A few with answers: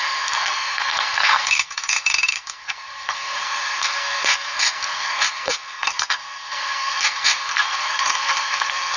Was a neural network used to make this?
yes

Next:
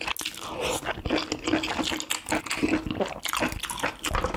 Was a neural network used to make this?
no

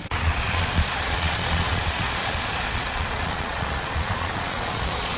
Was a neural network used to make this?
yes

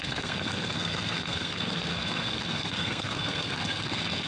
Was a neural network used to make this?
yes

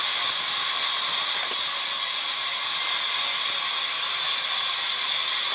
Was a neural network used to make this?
no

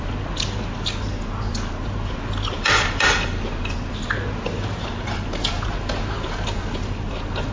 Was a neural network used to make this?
no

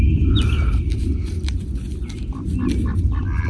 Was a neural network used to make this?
no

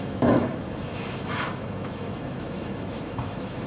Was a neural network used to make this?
yes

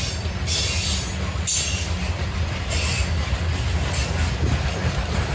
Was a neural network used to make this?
no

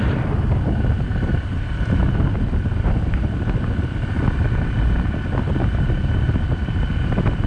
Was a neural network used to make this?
no